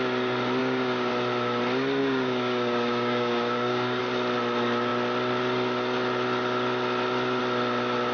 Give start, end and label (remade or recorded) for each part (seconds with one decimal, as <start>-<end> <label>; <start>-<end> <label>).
0.0-0.6 recorded; 0.6-1.1 remade; 1.1-2.0 recorded; 2.0-4.0 remade; 4.0-8.1 recorded